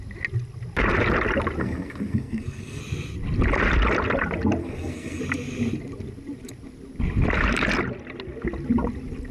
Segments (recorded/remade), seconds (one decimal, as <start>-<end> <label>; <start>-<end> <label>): 0.0-1.6 recorded; 1.6-2.8 remade; 2.8-4.6 recorded; 4.6-5.2 remade; 5.2-9.3 recorded